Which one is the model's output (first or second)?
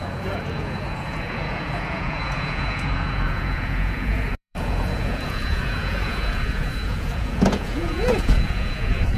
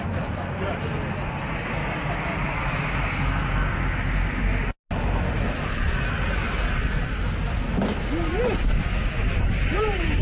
first